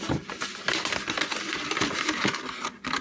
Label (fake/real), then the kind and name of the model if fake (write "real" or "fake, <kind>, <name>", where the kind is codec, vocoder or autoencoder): real